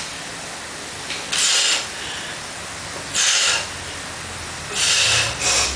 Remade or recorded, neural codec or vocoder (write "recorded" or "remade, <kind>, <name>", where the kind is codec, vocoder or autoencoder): recorded